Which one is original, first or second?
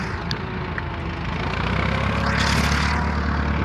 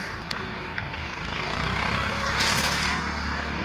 first